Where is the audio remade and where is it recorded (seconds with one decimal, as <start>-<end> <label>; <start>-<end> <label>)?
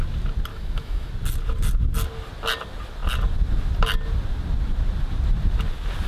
0.0-0.5 recorded; 0.5-1.1 remade; 1.1-6.1 recorded